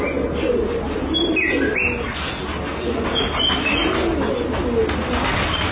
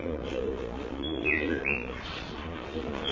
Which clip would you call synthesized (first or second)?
second